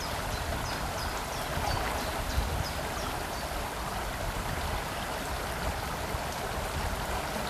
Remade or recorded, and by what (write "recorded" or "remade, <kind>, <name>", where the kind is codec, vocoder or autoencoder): recorded